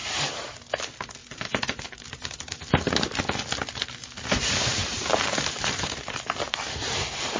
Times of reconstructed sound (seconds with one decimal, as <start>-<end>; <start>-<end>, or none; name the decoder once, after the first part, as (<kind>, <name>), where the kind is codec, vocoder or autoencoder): 0.0-0.6 (vocoder, BigVGAN v2); 1.2-3.2; 4.7-7.4